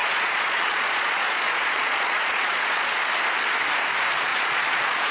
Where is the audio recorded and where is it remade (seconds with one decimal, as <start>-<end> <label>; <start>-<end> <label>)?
0.0-3.1 remade; 3.1-4.3 recorded; 4.3-5.1 remade